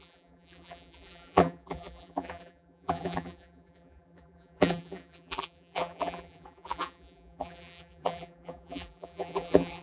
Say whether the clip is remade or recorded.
remade